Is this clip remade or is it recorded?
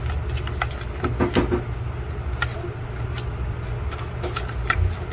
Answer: recorded